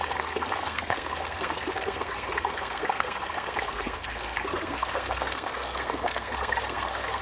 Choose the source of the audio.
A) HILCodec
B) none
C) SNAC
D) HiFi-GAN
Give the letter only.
C